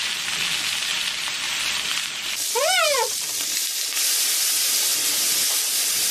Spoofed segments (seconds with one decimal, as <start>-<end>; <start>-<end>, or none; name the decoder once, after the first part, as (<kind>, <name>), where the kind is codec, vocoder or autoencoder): 0.9-4.1 (vocoder, BigVGAN v2); 4.9-5.4